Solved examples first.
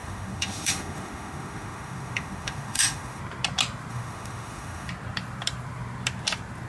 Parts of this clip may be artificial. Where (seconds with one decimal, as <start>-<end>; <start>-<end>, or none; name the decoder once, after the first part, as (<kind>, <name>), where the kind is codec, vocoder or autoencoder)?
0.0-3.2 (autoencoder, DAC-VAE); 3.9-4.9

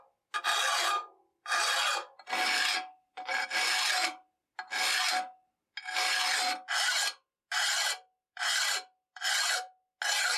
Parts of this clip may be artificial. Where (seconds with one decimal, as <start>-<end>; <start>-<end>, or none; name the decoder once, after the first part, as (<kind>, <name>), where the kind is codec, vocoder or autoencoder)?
none

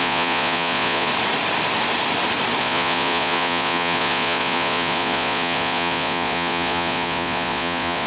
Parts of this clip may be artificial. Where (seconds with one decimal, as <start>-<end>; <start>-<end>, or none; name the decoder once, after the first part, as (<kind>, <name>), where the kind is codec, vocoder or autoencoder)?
0.0-1.1 (vocoder, Vocos); 2.6-8.1

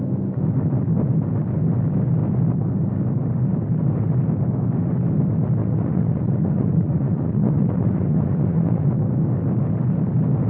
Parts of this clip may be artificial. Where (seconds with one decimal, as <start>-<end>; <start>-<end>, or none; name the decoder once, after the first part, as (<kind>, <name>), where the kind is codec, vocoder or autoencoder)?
5.6-8.9 (vocoder, Vocos)

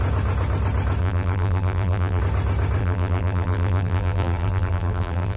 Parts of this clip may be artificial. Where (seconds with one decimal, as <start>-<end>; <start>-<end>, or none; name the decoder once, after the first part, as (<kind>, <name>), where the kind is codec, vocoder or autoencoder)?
1.0-2.2 (vocoder, BigVGAN v2); 2.8-5.4